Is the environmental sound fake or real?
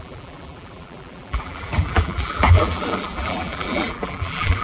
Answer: fake